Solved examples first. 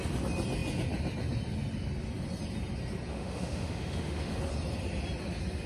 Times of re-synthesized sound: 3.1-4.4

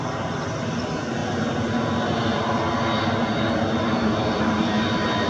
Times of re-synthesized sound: none

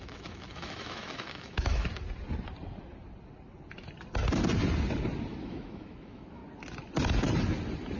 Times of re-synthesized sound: 0.0-1.9; 5.4-6.4

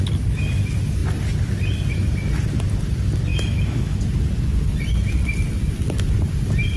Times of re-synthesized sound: 3.3-4.0

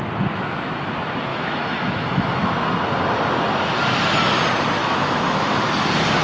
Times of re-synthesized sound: 1.3-2.5; 4.8-5.6

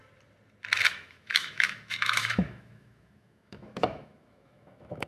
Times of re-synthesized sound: 0.9-5.1

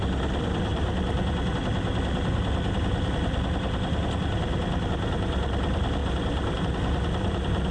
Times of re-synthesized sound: none